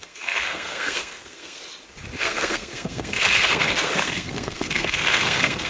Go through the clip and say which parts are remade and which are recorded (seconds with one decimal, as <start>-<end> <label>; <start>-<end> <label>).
0.0-1.6 remade; 1.6-2.2 recorded; 2.2-5.7 remade